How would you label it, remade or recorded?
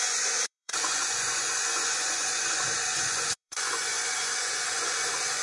remade